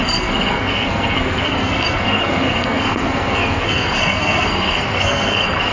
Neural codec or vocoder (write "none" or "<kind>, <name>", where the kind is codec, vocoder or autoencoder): codec, SNAC